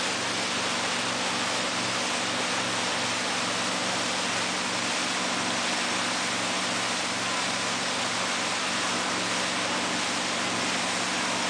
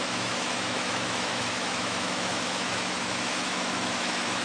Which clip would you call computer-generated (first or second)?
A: second